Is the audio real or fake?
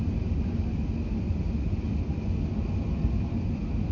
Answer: real